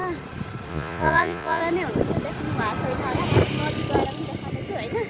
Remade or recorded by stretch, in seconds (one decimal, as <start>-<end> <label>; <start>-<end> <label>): 0.0-0.7 recorded; 0.7-1.6 remade; 1.6-5.1 recorded